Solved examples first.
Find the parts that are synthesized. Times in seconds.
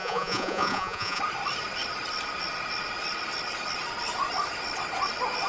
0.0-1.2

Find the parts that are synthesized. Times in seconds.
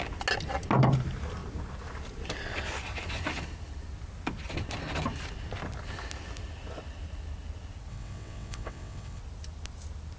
7.9-9.2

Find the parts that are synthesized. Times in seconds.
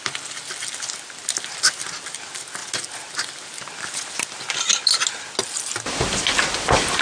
none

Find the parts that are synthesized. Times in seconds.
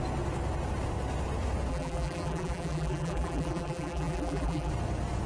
1.7-4.7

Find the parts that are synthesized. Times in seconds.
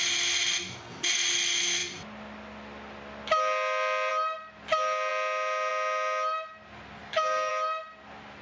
7.0-7.5